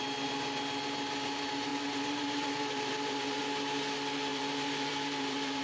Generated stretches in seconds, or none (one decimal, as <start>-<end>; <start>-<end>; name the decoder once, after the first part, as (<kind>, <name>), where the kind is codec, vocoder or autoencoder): 1.7-3.4 (vocoder, BigVGAN v2); 4.3-5.6